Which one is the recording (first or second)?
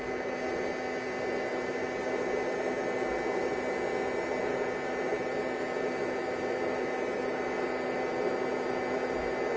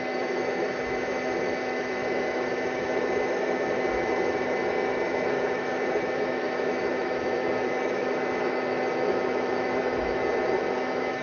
first